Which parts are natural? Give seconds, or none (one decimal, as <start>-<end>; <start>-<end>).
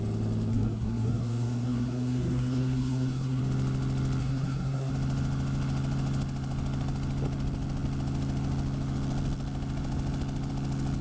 0.0-0.5; 3.4-4.2; 4.9-11.0